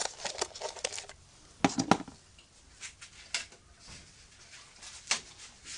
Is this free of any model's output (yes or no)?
yes